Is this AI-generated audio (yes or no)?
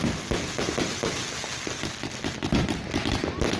no